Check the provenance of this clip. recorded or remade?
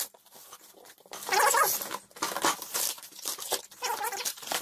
recorded